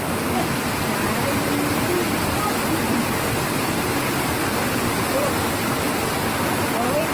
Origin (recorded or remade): recorded